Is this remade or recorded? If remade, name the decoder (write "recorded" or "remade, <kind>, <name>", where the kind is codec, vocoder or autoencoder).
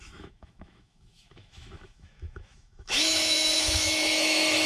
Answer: remade, autoencoder, DAC-VAE